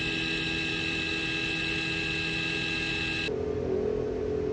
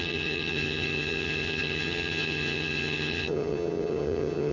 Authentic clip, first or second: first